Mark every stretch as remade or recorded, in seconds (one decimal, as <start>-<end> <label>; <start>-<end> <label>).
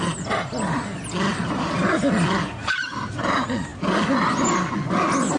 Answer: 0.0-5.4 recorded